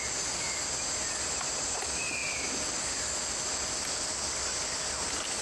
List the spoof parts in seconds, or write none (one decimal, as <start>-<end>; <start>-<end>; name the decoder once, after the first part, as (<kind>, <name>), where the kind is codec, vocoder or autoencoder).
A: none